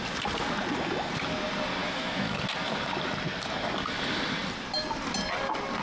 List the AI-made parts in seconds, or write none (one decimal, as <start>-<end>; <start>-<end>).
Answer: 1.8-2.4